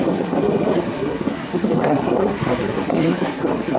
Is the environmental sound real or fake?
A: fake